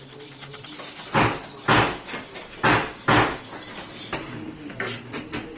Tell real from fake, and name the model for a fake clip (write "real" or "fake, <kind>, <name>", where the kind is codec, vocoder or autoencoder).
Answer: real